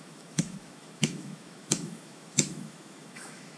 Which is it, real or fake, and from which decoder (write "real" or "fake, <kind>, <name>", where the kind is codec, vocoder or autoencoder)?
fake, autoencoder, DAC-VAE